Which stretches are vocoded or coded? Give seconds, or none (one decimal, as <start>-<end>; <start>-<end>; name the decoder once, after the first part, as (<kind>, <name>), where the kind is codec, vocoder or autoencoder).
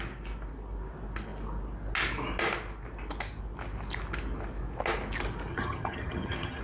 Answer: 5.5-6.6 (vocoder, HiFi-GAN)